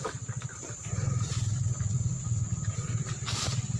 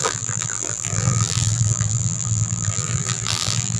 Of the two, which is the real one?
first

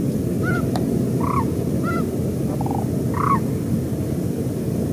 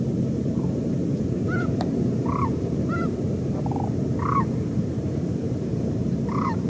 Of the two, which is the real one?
first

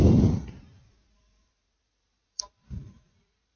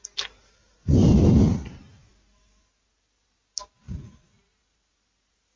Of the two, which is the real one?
second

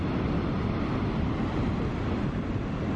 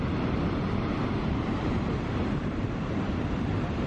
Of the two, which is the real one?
first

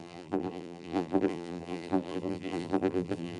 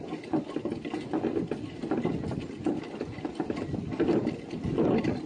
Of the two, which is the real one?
second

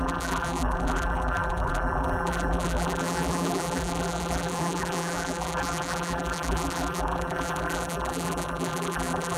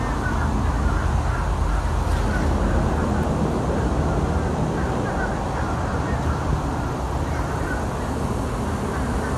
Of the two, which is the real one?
second